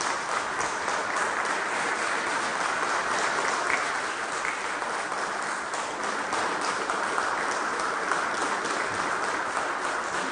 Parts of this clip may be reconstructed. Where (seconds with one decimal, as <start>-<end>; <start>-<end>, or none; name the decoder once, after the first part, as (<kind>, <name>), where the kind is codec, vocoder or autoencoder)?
none